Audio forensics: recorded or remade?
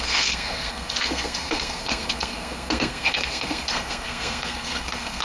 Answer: remade